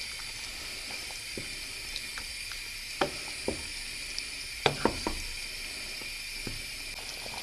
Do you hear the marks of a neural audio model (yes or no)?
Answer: no